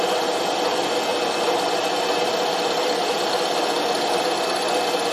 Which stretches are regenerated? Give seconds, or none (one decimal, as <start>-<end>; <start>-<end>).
none